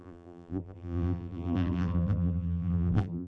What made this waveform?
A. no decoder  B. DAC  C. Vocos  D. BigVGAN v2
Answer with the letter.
D